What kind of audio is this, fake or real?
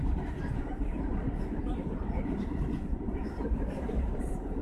fake